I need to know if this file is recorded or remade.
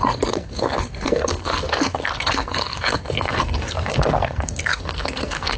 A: remade